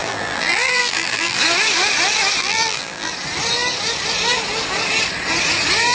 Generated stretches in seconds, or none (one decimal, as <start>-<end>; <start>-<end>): 0.0-1.4; 2.4-3.1